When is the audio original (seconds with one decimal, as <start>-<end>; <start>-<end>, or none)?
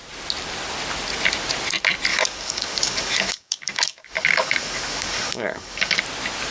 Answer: 0.0-2.1; 6.0-6.5